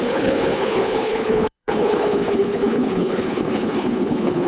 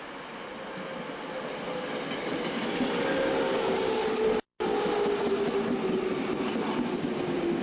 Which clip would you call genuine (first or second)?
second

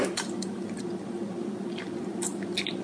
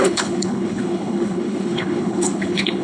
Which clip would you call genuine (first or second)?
first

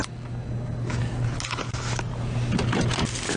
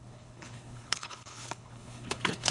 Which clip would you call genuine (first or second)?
first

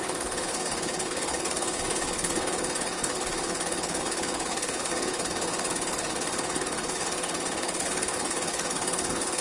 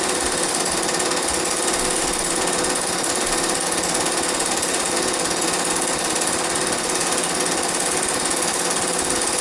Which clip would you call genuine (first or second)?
second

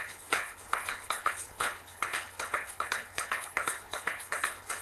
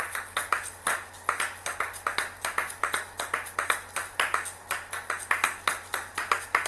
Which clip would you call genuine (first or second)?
second